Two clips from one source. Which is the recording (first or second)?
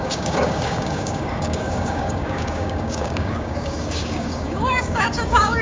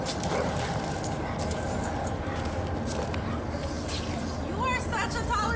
second